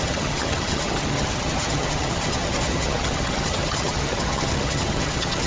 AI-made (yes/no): yes